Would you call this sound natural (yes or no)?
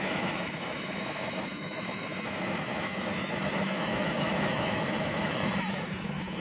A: no